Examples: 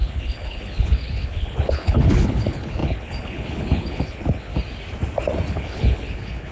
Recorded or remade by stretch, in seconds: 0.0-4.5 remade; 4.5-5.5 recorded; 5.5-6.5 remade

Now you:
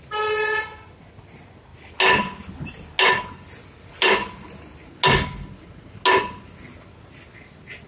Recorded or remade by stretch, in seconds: 0.0-7.9 recorded

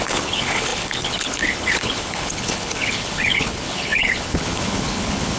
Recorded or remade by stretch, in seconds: 0.0-5.4 remade

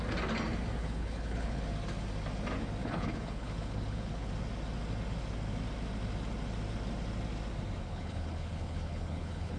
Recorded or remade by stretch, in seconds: 0.0-0.8 recorded; 0.8-1.6 remade; 1.6-2.8 recorded; 2.8-4.3 remade; 4.3-7.8 recorded; 7.8-9.6 remade

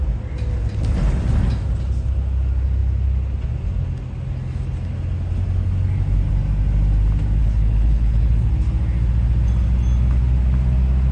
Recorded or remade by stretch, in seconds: 0.0-7.4 recorded; 7.4-8.5 remade; 8.5-11.1 recorded

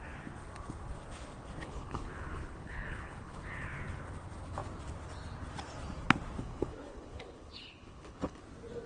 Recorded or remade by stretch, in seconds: 0.0-1.6 recorded; 1.6-3.4 remade; 3.4-6.4 recorded; 6.4-8.4 remade; 8.4-8.9 recorded